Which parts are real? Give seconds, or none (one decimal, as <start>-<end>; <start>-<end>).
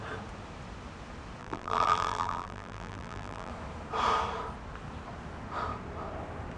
0.0-1.4; 3.5-6.6